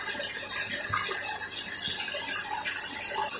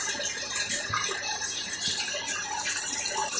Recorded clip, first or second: first